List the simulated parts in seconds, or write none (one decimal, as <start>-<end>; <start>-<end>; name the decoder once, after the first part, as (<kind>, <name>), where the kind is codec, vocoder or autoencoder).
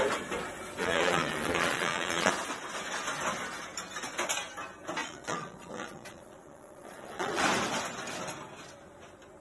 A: 0.8-2.3 (vocoder, Vocos); 5.0-7.4